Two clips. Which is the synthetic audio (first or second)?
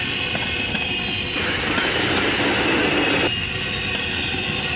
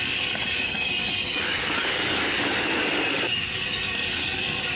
second